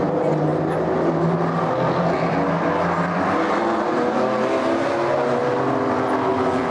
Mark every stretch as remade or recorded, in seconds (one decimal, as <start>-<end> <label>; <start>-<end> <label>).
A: 0.0-6.7 recorded

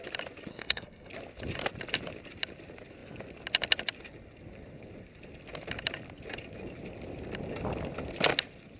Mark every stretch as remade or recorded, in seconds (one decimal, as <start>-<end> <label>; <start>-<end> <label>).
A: 0.0-0.5 recorded; 0.5-1.1 remade; 1.1-8.8 recorded

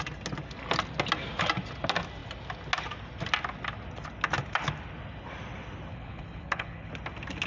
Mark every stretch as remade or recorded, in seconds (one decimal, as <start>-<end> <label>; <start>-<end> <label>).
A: 0.0-5.9 recorded; 5.9-6.9 remade; 6.9-7.5 recorded

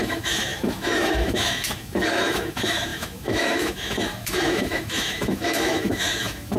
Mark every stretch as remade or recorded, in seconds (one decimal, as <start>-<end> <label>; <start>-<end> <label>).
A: 0.0-6.6 remade

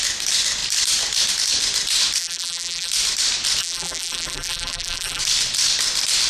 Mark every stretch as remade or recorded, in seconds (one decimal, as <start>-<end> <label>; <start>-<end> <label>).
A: 0.0-2.2 recorded; 2.2-2.9 remade; 2.9-3.6 recorded; 3.6-5.2 remade; 5.2-6.3 recorded

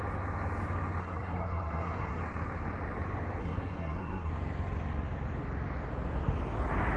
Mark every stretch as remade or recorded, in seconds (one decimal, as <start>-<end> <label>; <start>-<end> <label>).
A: 0.0-1.0 recorded; 1.0-2.2 remade; 2.2-3.4 recorded; 3.4-4.3 remade; 4.3-7.0 recorded